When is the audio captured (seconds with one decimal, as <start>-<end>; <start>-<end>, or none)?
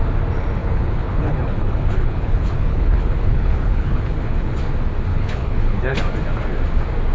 0.0-0.6; 4.6-5.1; 6.0-7.1